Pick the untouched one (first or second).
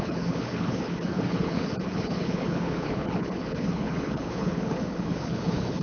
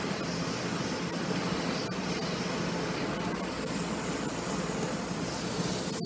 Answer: second